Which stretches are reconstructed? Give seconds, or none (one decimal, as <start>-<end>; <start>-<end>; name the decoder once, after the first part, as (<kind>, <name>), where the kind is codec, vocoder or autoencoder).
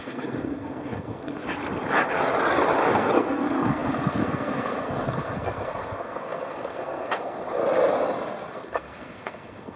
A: 0.0-1.4 (codec, SNAC); 2.9-7.6; 8.5-9.8